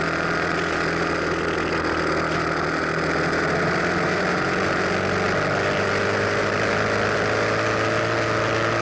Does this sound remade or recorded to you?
recorded